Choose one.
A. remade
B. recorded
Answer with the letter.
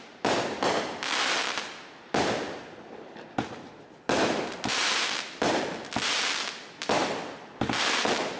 B